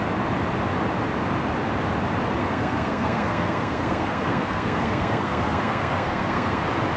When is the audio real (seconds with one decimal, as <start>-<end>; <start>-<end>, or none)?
0.0-2.4; 6.6-7.0